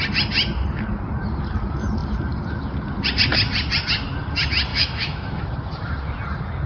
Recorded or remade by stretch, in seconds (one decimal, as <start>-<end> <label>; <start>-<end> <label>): 0.0-4.7 recorded; 4.7-5.4 remade; 5.4-6.7 recorded